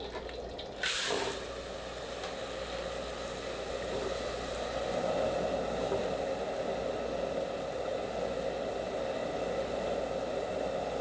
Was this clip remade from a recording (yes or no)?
no